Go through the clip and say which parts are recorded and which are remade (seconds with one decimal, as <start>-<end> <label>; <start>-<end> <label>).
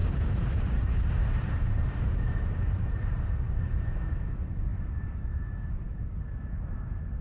0.0-7.2 remade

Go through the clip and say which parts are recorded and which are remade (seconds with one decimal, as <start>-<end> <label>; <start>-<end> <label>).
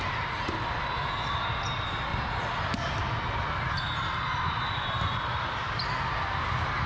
0.0-6.9 recorded